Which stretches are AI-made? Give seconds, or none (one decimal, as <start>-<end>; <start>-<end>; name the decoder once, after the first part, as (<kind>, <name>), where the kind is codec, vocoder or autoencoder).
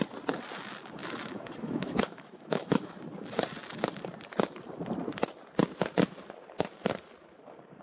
1.0-2.9 (autoencoder, DAC-VAE)